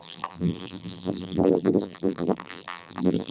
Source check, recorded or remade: remade